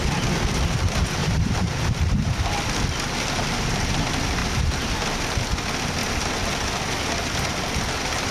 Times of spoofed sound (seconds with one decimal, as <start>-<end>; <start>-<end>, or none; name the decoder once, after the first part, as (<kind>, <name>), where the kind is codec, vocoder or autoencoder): 1.2-2.4 (vocoder, BigVGAN v2); 4.4-4.9